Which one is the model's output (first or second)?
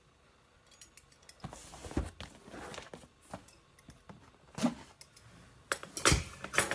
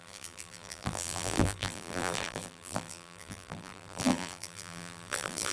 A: second